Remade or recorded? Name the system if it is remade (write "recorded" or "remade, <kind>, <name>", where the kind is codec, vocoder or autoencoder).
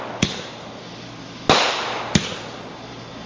recorded